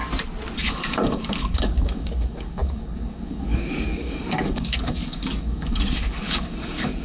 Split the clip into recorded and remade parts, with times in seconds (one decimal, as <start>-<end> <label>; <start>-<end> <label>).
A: 0.0-0.6 recorded; 0.6-7.0 remade